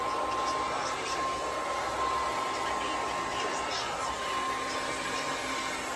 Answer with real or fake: real